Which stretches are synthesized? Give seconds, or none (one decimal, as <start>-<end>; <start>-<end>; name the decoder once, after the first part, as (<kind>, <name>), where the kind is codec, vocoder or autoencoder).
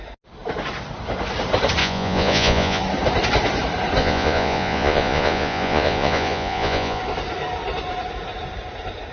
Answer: 1.8-2.8 (vocoder, Vocos); 4.0-7.0